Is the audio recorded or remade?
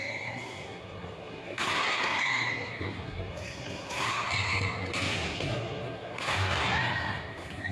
remade